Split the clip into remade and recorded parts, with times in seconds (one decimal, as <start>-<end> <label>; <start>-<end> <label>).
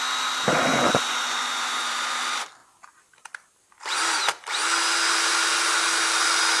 0.0-0.7 recorded; 0.7-1.9 remade; 1.9-6.6 recorded